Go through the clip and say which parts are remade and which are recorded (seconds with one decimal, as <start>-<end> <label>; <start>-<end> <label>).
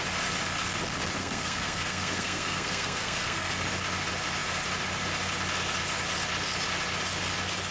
0.0-1.2 recorded; 1.2-3.5 remade; 3.5-7.7 recorded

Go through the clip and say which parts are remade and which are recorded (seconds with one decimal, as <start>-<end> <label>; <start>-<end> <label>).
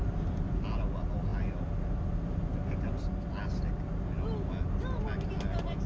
0.0-5.9 recorded